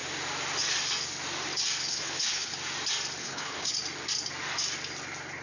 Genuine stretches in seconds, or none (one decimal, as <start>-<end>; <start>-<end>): 0.0-1.9; 2.5-3.2; 3.7-5.4